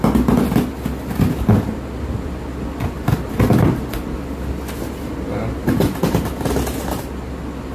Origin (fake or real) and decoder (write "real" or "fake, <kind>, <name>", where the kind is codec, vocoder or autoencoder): real